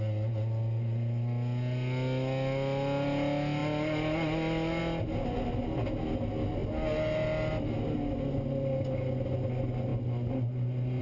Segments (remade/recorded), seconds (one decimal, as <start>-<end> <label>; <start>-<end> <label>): 0.0-11.0 recorded